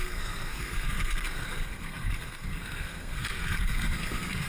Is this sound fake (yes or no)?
yes